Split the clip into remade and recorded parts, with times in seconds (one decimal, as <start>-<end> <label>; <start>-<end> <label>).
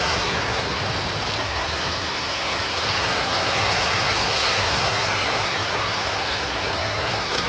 0.0-0.8 remade; 0.8-1.4 recorded; 1.4-7.5 remade